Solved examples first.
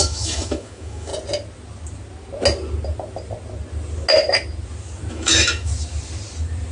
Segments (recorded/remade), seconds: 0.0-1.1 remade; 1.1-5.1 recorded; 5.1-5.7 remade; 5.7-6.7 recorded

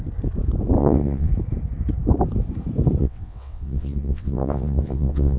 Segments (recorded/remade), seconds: 0.0-0.8 recorded; 0.8-1.3 remade; 1.3-3.0 recorded; 3.0-5.4 remade

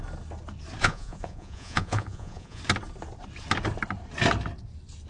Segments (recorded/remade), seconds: 0.0-0.8 recorded; 0.8-2.6 remade; 2.6-5.1 recorded

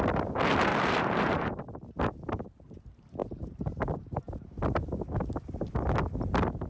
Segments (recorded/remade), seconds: 0.0-0.7 recorded; 0.7-1.6 remade; 1.6-3.2 recorded; 3.2-4.2 remade; 4.2-6.7 recorded

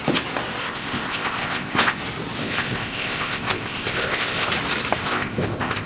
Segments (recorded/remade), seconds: 0.0-0.6 recorded; 0.6-2.0 remade; 2.0-2.4 recorded; 2.4-4.5 remade; 4.5-5.0 recorded; 5.0-5.9 remade